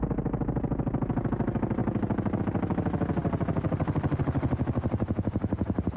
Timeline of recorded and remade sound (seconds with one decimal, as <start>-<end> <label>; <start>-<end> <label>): 0.0-6.0 recorded